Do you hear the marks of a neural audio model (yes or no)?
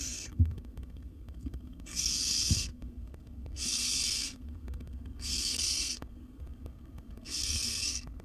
yes